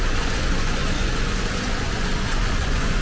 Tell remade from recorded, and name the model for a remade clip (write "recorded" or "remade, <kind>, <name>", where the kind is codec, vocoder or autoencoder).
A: remade, vocoder, Vocos